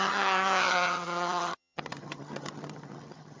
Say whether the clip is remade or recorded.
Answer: remade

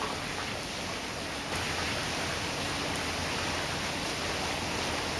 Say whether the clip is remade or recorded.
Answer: recorded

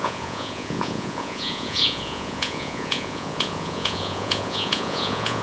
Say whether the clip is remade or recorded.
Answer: remade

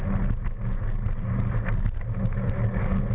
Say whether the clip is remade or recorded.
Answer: recorded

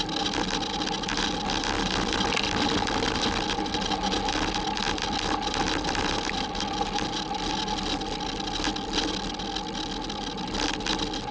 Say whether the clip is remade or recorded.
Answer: recorded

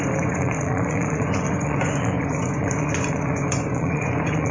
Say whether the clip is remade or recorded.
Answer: remade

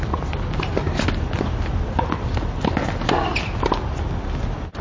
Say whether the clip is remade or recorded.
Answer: recorded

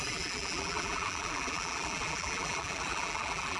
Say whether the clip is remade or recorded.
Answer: remade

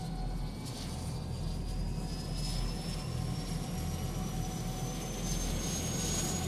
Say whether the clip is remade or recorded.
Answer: recorded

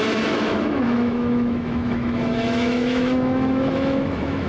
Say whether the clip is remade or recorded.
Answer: remade